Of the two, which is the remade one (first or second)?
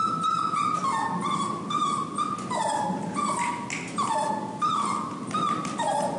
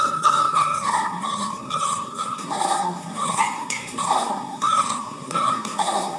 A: second